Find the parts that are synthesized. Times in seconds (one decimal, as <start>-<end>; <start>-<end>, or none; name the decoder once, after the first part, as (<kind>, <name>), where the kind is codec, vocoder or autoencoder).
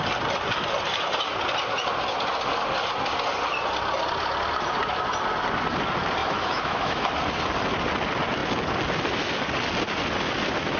6.2-7.1 (autoencoder, DAC-VAE)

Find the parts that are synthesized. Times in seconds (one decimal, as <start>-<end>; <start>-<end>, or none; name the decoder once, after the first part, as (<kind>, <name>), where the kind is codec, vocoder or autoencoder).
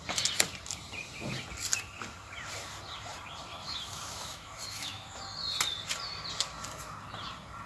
3.5-5.2 (autoencoder, DAC-VAE)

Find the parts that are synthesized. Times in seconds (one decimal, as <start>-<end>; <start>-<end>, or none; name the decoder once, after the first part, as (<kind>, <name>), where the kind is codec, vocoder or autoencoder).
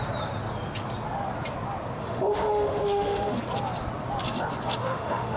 2.0-3.4 (autoencoder, DAC-VAE); 4.8-5.4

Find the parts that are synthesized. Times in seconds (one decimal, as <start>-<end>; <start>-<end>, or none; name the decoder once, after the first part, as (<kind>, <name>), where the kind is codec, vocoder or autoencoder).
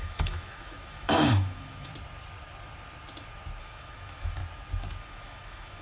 0.0-1.9 (autoencoder, DAC-VAE); 3.6-4.4; 5.0-5.8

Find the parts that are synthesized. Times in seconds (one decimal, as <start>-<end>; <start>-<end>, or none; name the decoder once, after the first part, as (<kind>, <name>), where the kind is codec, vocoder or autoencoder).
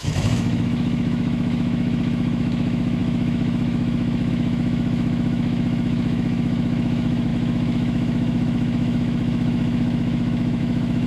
0.0-11.1 (autoencoder, DAC-VAE)